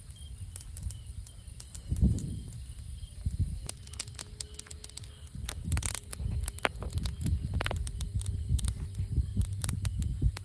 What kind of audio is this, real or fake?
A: real